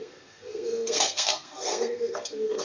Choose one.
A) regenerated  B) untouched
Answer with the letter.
A